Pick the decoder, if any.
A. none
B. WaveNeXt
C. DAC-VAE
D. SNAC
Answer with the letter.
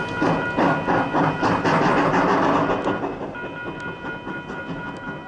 A